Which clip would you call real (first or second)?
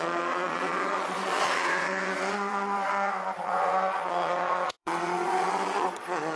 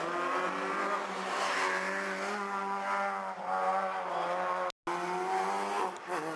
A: second